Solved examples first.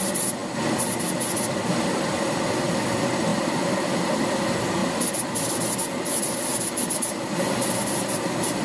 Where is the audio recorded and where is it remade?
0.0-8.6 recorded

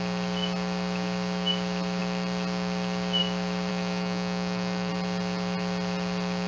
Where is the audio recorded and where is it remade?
0.0-3.7 recorded; 3.7-4.9 remade; 4.9-6.5 recorded